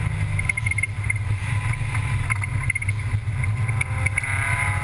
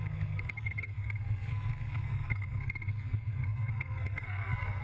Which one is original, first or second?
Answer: first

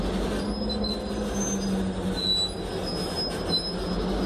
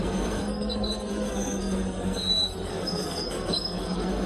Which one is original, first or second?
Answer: first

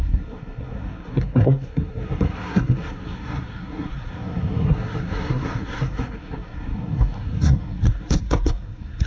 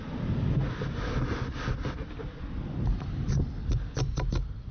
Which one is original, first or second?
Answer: second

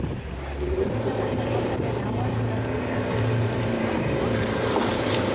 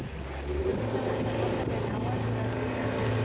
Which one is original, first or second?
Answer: second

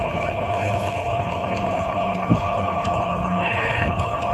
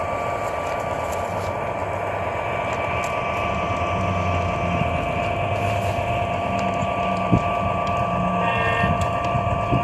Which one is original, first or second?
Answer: second